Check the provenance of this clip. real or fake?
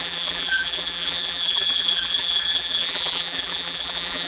fake